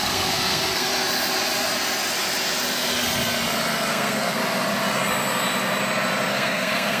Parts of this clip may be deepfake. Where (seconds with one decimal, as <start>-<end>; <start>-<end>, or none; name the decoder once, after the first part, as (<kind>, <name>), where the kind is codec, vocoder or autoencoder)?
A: 0.0-0.9 (codec, SNAC); 3.9-4.4; 6.3-7.0